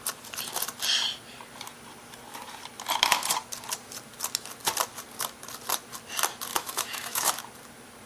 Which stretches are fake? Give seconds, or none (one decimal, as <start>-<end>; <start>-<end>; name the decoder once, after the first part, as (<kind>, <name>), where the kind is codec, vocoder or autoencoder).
6.5-7.3 (autoencoder, DAC-VAE)